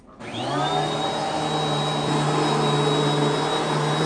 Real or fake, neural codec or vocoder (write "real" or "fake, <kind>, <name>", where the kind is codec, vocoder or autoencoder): real